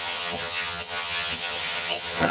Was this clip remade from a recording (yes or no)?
yes